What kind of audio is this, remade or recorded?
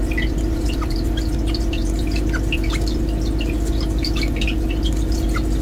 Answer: recorded